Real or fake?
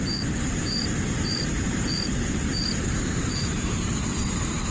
fake